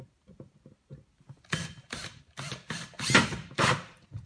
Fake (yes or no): yes